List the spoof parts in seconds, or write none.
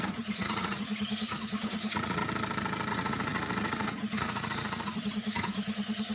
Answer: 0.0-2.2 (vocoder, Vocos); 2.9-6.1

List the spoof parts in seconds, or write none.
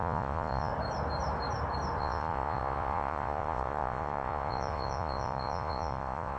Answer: 0.0-0.7 (vocoder, Vocos); 2.0-6.4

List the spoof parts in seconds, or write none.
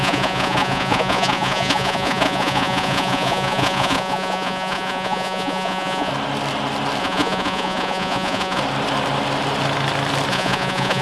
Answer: 0.0-6.1 (vocoder, Vocos); 7.0-8.6; 10.3-11.0